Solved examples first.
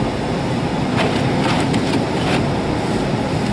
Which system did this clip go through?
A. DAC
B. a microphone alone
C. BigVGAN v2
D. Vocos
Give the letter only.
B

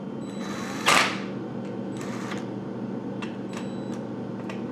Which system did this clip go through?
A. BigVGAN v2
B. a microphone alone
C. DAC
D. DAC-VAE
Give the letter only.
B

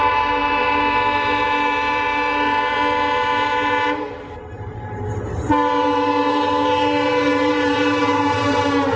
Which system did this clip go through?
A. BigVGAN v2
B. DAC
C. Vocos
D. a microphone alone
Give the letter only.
A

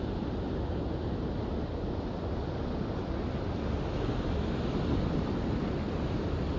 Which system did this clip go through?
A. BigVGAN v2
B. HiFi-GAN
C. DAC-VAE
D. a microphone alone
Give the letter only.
D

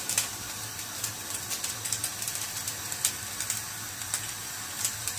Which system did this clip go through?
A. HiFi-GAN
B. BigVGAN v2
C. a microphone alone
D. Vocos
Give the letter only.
B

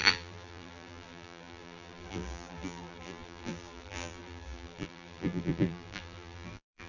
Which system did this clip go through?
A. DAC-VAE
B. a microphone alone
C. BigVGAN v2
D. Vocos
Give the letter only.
C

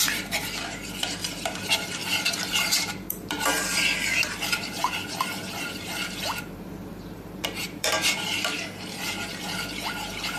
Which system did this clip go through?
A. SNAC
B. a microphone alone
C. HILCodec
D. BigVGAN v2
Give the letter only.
D